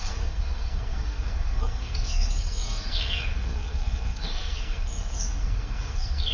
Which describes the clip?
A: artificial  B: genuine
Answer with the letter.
A